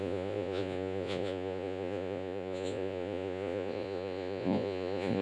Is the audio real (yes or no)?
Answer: no